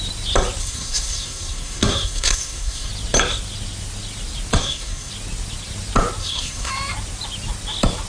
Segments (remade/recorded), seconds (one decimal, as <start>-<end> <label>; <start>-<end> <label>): 0.0-0.6 recorded; 0.6-2.9 remade; 2.9-4.6 recorded; 4.6-5.1 remade; 5.1-6.2 recorded; 6.2-6.7 remade; 6.7-8.1 recorded